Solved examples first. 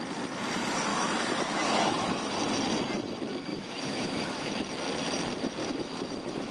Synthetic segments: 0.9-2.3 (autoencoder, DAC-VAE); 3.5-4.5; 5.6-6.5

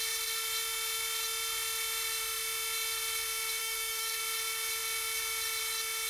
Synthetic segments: 3.6-4.2 (autoencoder, DAC-VAE)

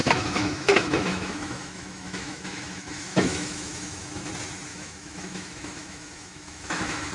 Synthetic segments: 0.0-4.3 (autoencoder, DAC-VAE); 4.7-7.1

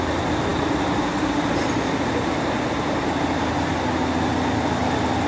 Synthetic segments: none